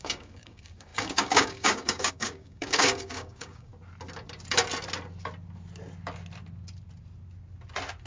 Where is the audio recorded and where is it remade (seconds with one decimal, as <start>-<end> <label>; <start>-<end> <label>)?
0.0-3.7 remade; 3.7-8.1 recorded